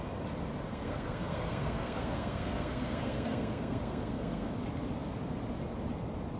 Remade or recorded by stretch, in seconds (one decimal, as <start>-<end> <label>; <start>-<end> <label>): 0.0-0.7 recorded; 0.7-4.5 remade; 4.5-6.4 recorded